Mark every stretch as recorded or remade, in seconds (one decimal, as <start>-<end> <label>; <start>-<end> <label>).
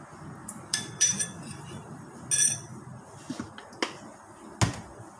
0.0-0.4 recorded; 0.4-2.1 remade; 2.1-5.2 recorded